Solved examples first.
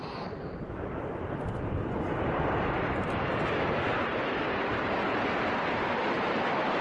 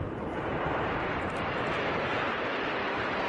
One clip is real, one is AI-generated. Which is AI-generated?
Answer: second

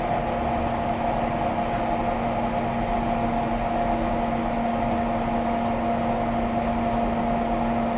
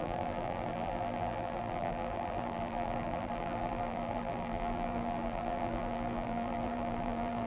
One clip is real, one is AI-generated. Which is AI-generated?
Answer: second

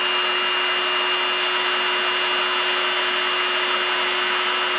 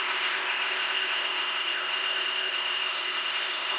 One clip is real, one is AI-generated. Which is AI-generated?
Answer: second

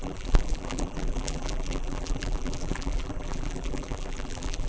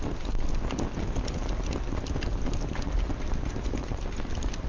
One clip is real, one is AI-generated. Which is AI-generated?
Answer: first